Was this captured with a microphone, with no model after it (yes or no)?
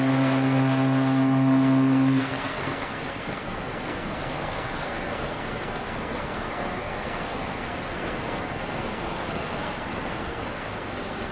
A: no